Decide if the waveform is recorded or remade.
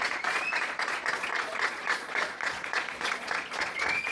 remade